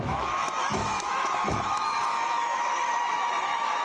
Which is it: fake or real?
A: fake